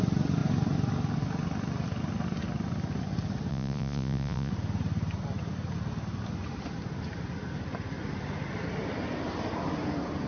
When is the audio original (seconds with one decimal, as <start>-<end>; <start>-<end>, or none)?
0.0-3.5; 4.5-10.3